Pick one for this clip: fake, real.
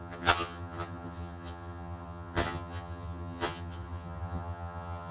fake